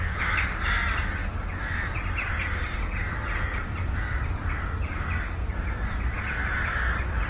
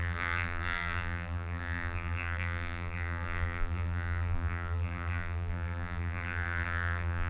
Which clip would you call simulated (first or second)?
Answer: second